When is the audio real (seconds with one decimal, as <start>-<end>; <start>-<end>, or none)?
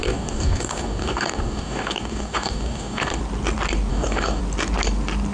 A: 3.2-3.9; 4.4-5.3